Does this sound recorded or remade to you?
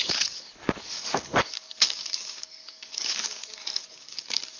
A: remade